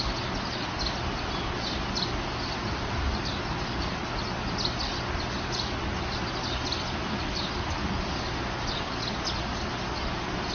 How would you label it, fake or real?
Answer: real